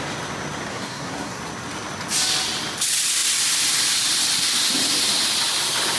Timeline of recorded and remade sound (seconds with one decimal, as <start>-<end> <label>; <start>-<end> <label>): 0.0-0.7 recorded; 0.7-1.4 remade; 1.4-6.0 recorded